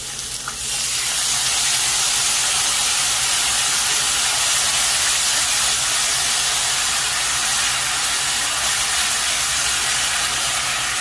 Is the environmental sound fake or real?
real